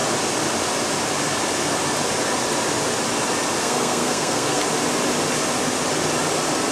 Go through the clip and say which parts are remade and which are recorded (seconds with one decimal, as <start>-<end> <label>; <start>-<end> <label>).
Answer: 0.0-3.6 recorded; 3.6-4.6 remade; 4.6-6.7 recorded